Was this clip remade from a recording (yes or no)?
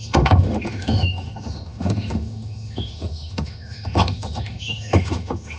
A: yes